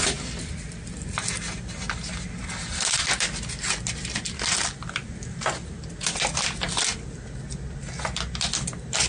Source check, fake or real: real